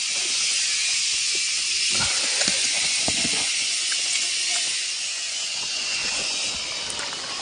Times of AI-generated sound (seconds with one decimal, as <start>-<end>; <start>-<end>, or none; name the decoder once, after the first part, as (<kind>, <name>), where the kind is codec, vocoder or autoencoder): 0.0-6.4 (vocoder, Vocos); 7.0-7.4